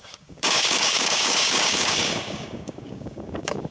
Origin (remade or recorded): remade